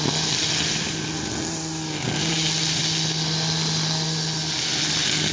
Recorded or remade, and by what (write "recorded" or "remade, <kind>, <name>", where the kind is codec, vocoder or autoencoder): recorded